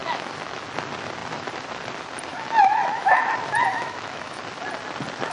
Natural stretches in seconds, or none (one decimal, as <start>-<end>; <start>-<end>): 0.6-2.3; 3.3-3.7; 4.4-5.3